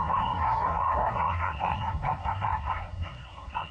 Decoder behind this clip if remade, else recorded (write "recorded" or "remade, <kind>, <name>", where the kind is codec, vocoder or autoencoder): remade, codec, SNAC